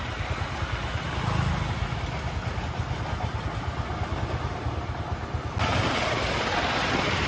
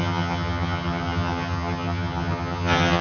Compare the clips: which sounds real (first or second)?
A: first